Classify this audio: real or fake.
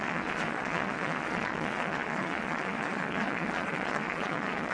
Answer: fake